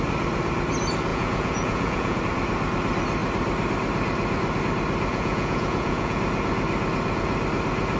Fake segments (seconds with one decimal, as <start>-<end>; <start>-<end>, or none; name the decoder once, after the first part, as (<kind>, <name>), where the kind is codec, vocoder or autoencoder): 1.1-2.2 (vocoder, Vocos); 5.1-6.2